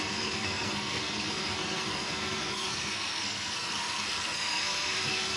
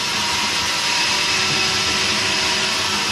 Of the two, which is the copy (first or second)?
first